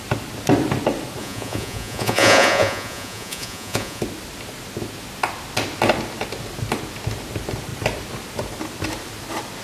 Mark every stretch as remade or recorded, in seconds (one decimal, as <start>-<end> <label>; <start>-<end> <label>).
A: 0.0-1.2 recorded; 1.2-4.0 remade; 4.0-9.6 recorded